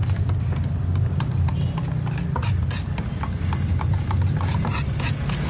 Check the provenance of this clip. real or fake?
real